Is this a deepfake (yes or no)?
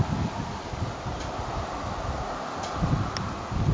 no